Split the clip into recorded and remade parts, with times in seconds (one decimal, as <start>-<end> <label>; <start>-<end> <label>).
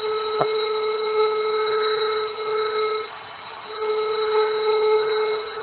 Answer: 0.0-5.6 remade